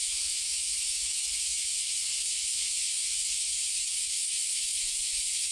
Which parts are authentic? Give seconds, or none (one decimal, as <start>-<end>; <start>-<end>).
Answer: none